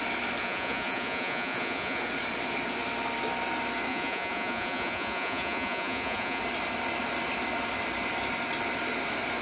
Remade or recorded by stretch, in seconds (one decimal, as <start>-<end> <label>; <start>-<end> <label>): 0.0-0.4 recorded; 0.4-2.0 remade; 2.0-3.9 recorded; 3.9-6.4 remade; 6.4-9.4 recorded